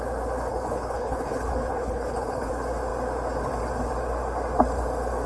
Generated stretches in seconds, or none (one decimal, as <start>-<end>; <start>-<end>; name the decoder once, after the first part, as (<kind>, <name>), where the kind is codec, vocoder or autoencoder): 0.5-2.5 (codec, HILCodec)